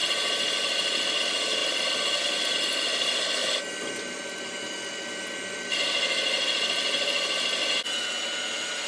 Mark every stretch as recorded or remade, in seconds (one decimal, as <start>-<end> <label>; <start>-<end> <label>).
0.0-8.9 recorded